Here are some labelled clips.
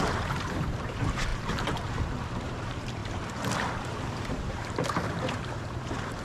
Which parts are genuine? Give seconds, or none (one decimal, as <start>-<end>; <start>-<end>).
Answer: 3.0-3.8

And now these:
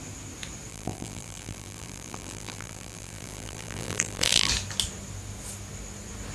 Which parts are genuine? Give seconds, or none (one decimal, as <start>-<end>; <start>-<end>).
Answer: 0.0-0.7; 4.5-6.3

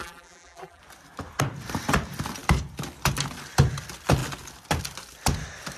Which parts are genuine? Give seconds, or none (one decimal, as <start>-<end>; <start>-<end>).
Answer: 0.8-5.8